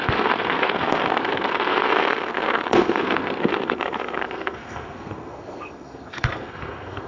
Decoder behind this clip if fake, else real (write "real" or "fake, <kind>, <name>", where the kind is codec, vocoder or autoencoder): fake, codec, SNAC